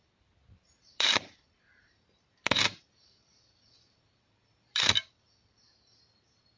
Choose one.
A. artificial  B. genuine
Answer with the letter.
A